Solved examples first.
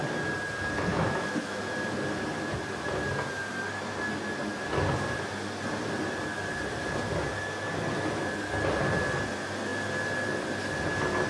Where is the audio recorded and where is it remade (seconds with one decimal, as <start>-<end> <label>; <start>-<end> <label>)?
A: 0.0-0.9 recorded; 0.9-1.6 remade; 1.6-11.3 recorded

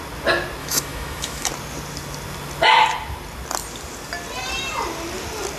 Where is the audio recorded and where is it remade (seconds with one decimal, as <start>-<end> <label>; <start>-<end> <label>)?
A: 0.0-0.6 recorded; 0.6-1.5 remade; 1.5-5.6 recorded

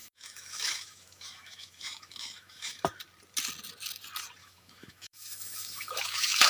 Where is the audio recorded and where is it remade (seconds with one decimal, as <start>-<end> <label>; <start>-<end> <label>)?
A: 0.0-2.8 remade; 2.8-4.4 recorded; 4.4-6.5 remade

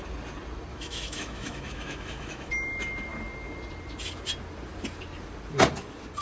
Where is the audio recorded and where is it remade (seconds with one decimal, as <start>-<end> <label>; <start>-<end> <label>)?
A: 0.0-0.7 recorded; 0.7-2.5 remade; 2.5-6.2 recorded

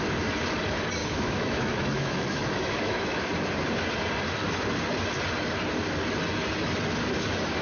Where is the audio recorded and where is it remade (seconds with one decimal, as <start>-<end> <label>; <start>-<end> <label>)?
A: 0.0-1.0 recorded; 1.0-3.3 remade; 3.3-7.6 recorded